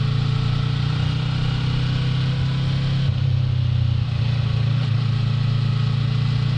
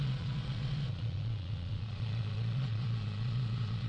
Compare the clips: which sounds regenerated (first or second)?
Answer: second